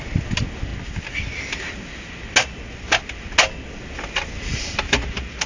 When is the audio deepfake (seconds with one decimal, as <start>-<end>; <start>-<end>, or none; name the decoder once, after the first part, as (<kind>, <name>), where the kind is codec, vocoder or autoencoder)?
none